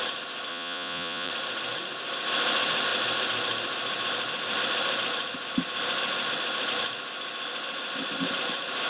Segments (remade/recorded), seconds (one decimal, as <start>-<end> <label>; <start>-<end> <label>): 0.0-0.5 recorded; 0.5-1.3 remade; 1.3-8.9 recorded